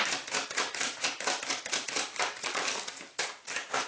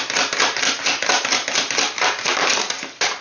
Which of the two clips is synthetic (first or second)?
first